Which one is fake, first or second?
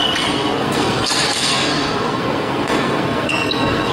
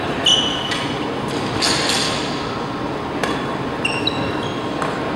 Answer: first